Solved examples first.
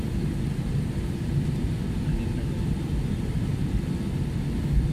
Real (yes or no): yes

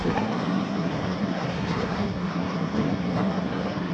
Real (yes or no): no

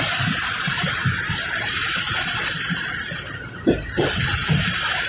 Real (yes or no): yes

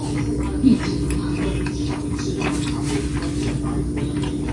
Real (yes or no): yes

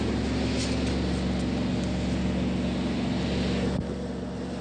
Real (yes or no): yes